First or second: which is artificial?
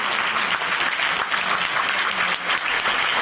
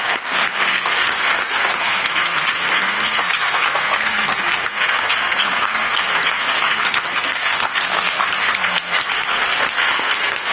second